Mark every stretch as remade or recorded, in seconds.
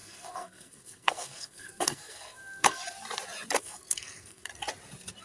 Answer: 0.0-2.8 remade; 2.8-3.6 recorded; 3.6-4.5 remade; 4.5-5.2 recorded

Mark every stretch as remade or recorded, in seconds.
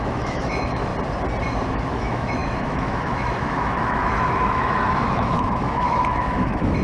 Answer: 0.0-0.9 remade; 0.9-1.7 recorded; 1.7-6.8 remade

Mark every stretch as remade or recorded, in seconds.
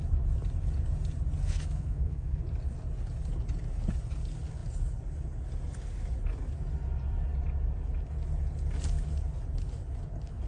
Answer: 0.0-1.4 recorded; 1.4-2.4 remade; 2.4-10.5 recorded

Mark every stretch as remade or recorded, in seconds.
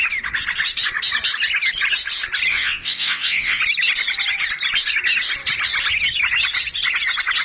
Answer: 0.0-2.5 recorded; 2.5-3.6 remade; 3.6-7.4 recorded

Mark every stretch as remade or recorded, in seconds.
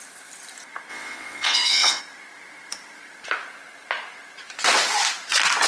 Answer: 0.0-0.9 recorded; 0.9-2.0 remade; 2.0-5.7 recorded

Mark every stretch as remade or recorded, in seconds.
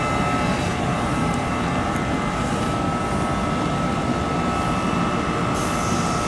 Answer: 0.0-6.3 recorded